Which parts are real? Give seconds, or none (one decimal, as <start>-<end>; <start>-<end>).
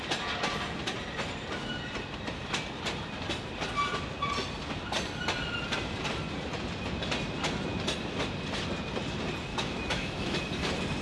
0.0-9.5; 10.4-11.0